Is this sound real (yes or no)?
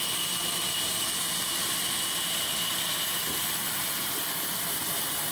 yes